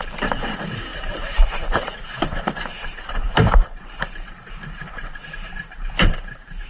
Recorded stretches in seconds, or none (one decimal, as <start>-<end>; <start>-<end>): none